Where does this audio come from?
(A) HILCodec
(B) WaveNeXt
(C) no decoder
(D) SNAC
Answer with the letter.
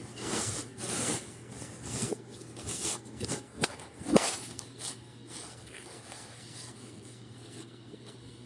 D